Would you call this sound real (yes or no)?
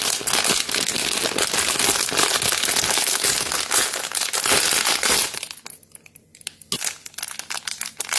yes